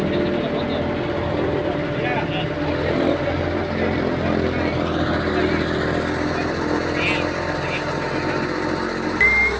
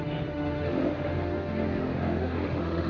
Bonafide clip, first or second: first